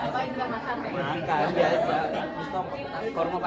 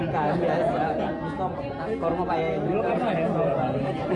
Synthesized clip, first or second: first